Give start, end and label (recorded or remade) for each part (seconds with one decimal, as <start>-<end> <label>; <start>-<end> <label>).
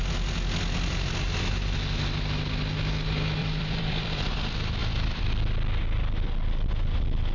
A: 0.0-3.4 recorded; 3.4-4.3 remade; 4.3-4.8 recorded; 4.8-5.3 remade; 5.3-7.3 recorded